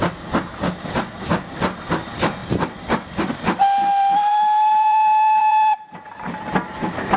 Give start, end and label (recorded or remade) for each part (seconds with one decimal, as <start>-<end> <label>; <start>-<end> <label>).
0.0-4.2 recorded; 4.2-6.5 remade; 6.5-7.2 recorded